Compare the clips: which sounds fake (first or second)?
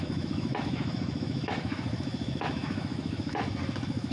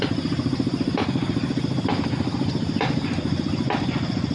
first